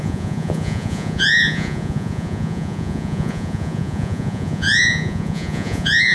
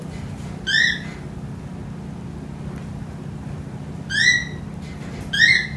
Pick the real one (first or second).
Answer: second